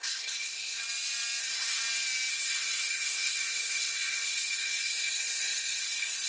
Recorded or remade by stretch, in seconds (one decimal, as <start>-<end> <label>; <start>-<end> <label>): 0.0-0.8 remade; 0.8-1.4 recorded; 1.4-1.8 remade; 1.8-2.3 recorded; 2.3-6.3 remade